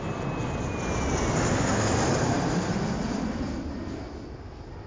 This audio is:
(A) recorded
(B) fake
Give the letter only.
A